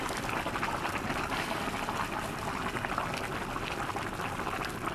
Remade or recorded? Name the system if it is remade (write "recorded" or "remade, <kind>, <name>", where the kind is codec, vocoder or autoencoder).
recorded